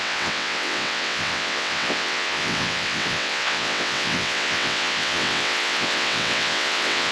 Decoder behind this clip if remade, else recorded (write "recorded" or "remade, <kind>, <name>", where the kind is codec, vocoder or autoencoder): remade, vocoder, WaveNeXt